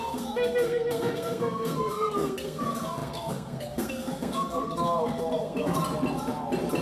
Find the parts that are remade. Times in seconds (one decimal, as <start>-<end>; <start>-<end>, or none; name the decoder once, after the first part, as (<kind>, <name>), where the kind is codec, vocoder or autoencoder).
0.0-5.8 (codec, SNAC)